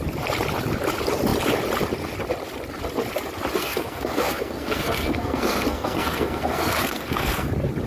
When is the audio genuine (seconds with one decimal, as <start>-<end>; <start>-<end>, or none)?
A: 0.0-3.6; 7.5-7.9